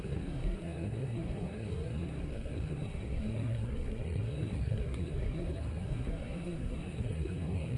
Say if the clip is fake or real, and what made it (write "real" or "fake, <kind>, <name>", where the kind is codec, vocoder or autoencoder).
fake, codec, SNAC